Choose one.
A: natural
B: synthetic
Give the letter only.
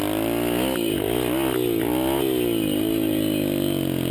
A